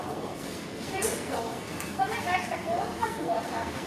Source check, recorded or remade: remade